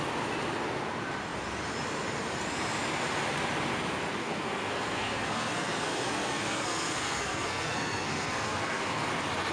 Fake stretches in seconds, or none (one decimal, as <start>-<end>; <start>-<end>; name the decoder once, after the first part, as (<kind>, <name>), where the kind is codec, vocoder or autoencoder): 4.2-9.1 (codec, SNAC)